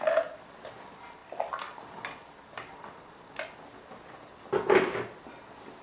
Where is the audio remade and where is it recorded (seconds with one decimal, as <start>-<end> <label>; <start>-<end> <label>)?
0.0-5.8 recorded